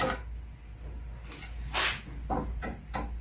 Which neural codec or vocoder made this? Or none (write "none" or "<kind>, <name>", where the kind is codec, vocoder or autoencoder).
none